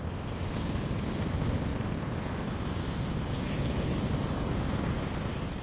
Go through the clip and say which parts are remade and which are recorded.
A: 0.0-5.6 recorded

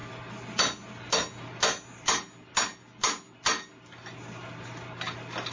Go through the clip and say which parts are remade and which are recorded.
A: 0.0-5.5 recorded

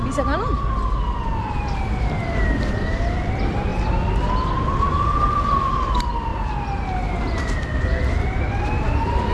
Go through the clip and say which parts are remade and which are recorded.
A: 0.0-3.7 remade; 3.7-4.3 recorded; 4.3-6.3 remade; 6.3-7.6 recorded; 7.6-9.3 remade

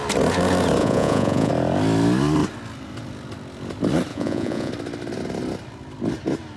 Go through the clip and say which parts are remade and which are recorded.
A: 0.0-0.8 recorded; 0.8-1.5 remade; 1.5-4.1 recorded; 4.1-4.7 remade; 4.7-6.6 recorded

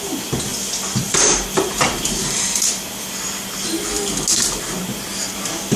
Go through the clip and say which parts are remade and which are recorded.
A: 0.0-0.5 recorded; 0.5-4.0 remade; 4.0-5.8 recorded

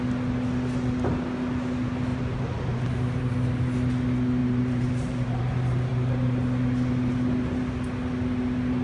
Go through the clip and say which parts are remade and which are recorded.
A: 0.0-2.1 recorded; 2.1-3.2 remade; 3.2-4.4 recorded; 4.4-5.4 remade; 5.4-8.8 recorded

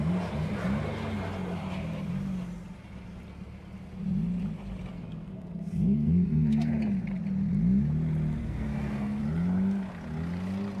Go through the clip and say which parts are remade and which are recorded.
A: 0.0-4.9 recorded; 4.9-6.7 remade; 6.7-8.4 recorded; 8.4-9.2 remade; 9.2-10.8 recorded

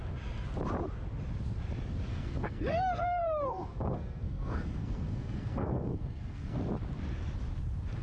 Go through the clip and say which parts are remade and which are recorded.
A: 0.0-2.1 recorded; 2.1-6.6 remade; 6.6-8.0 recorded